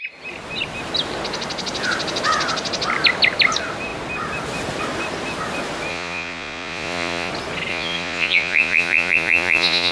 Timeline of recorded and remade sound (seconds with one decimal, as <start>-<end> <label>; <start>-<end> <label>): 0.0-5.9 recorded; 5.9-7.3 remade; 7.3-7.7 recorded; 7.7-9.9 remade